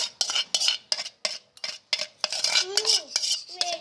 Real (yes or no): yes